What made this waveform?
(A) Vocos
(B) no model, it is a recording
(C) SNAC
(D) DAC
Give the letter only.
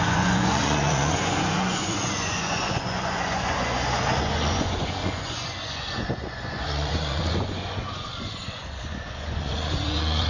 A